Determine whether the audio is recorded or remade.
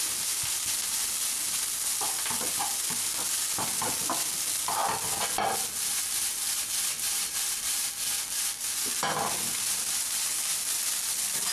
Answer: recorded